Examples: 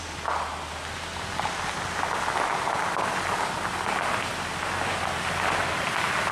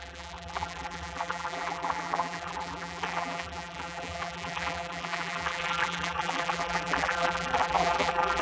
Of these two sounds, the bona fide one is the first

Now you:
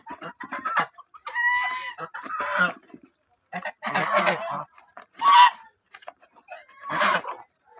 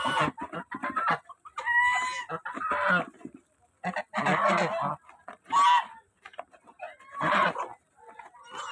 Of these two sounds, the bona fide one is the second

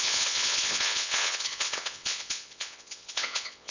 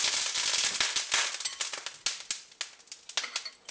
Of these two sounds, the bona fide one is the second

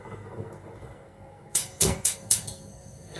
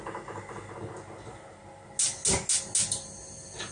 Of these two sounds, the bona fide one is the second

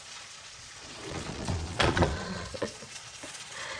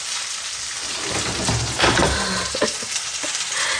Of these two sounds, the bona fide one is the second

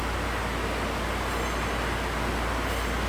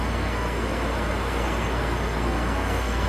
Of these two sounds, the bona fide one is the first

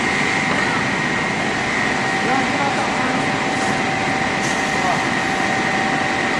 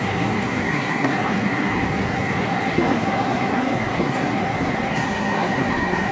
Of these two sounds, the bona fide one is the first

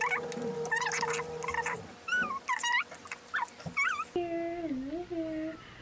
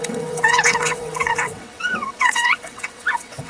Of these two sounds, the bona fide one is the first